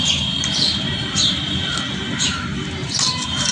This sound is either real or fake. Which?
fake